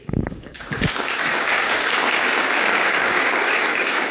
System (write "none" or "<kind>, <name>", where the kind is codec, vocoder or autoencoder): codec, DAC